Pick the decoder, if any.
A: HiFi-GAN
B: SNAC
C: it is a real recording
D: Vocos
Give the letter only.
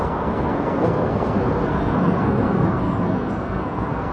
B